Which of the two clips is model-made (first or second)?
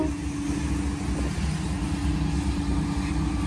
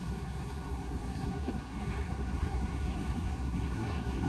second